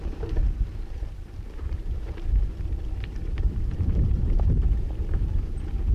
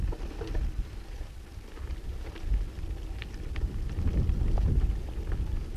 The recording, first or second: second